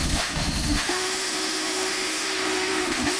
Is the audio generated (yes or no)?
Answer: yes